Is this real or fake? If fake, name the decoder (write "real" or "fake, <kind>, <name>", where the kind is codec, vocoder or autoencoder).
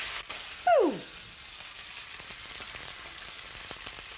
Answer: real